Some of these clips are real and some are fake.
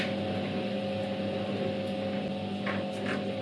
real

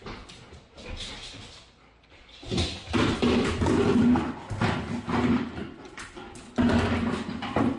real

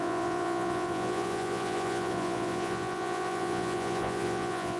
fake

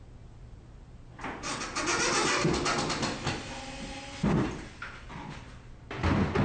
real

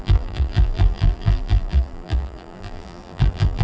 fake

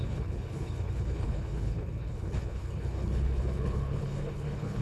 fake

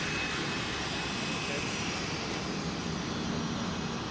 real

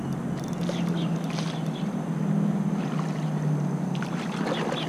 real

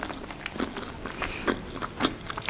real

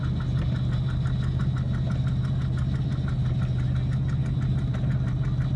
real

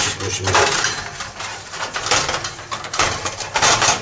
fake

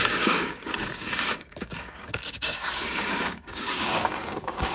fake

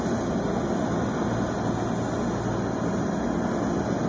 real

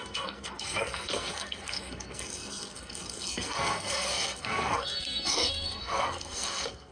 fake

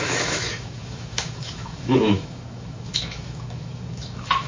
fake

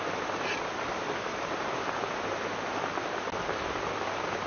real